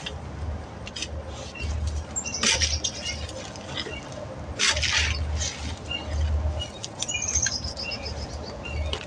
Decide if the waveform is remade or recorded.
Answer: recorded